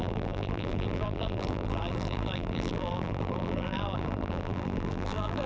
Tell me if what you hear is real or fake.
fake